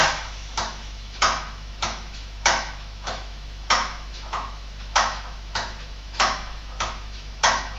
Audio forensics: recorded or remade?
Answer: remade